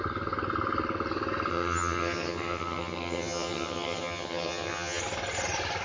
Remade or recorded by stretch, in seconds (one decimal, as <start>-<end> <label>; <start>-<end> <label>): 0.0-1.5 recorded; 1.5-5.0 remade; 5.0-5.8 recorded